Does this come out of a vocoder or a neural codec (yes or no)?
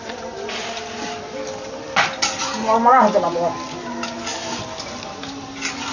no